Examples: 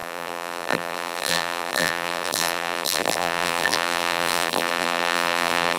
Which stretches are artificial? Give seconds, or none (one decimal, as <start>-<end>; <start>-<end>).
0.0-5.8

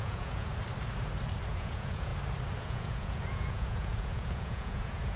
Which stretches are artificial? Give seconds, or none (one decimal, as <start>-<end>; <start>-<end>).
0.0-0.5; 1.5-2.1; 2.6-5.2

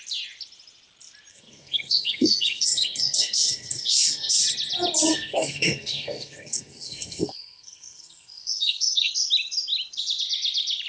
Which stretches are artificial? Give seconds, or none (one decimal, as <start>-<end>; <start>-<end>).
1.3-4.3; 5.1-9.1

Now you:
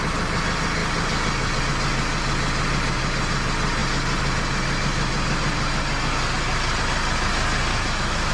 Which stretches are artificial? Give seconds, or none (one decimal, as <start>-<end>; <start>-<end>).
7.7-8.3

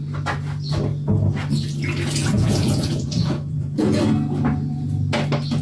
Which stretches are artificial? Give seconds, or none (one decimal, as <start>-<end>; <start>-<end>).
2.2-4.0

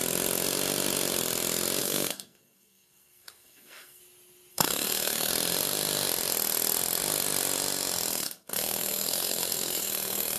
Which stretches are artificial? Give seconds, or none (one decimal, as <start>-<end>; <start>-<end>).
1.8-4.0; 4.5-5.3; 8.1-10.4